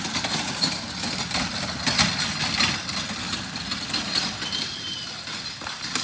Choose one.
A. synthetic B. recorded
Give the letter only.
B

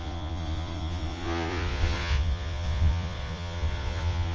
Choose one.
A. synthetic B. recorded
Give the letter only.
A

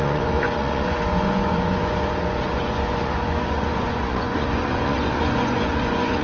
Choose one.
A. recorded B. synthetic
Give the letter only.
B